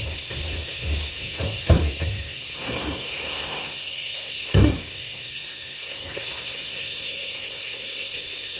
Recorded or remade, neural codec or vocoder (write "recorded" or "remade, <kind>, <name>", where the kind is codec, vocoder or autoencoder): remade, codec, SNAC